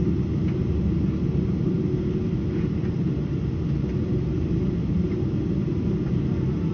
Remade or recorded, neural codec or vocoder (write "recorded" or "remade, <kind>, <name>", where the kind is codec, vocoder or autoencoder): recorded